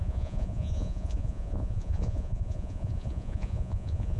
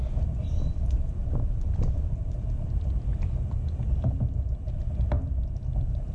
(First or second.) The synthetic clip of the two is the first